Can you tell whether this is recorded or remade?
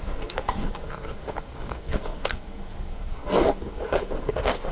remade